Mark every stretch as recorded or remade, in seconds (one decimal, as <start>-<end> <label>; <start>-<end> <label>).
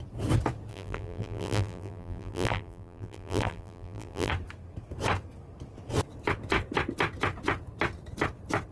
0.0-0.7 recorded; 0.7-4.3 remade; 4.3-8.7 recorded